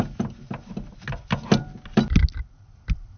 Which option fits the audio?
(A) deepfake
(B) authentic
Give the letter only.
B